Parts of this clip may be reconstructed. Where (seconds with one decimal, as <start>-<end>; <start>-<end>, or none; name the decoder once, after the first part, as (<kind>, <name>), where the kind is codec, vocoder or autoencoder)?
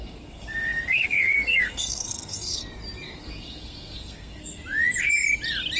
0.0-2.6 (codec, SNAC); 3.2-4.6